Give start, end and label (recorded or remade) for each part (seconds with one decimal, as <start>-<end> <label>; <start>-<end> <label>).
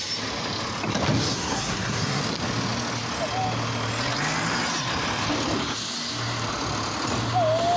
0.0-1.3 recorded; 1.3-2.2 remade; 2.2-7.8 recorded